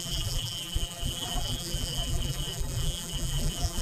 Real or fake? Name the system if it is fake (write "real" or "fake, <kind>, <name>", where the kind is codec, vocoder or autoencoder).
fake, vocoder, BigVGAN v2